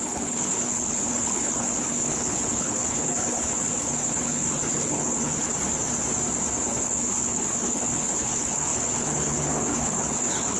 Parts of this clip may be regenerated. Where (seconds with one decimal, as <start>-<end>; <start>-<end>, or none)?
0.0-5.5; 6.7-10.6